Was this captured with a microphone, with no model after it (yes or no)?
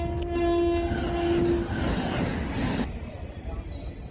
yes